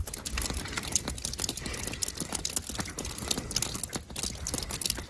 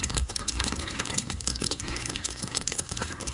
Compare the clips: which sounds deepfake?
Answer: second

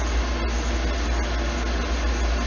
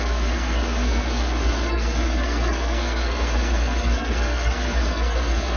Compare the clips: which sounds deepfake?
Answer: second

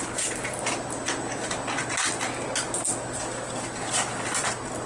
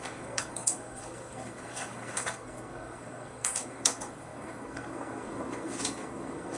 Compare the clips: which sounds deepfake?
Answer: second